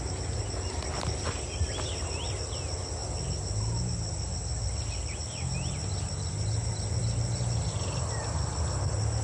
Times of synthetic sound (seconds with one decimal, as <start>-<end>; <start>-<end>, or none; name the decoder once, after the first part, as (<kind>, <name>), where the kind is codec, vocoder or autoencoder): none